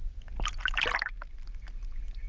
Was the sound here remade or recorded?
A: recorded